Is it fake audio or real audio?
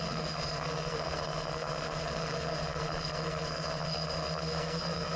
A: fake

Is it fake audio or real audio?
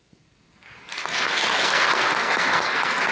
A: fake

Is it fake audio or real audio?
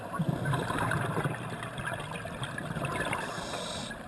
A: real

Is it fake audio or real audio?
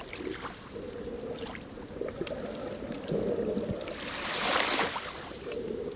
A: real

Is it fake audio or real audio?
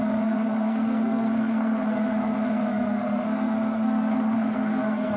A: fake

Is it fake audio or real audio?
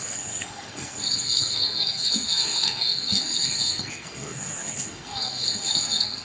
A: fake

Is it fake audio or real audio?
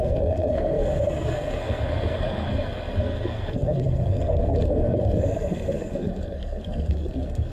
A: fake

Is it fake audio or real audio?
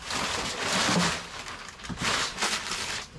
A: real